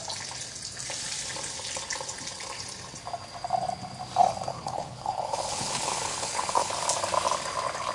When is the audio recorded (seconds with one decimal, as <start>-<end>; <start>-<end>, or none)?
0.0-4.5; 6.7-7.9